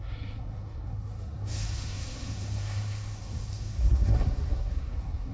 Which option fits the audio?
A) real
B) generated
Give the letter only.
B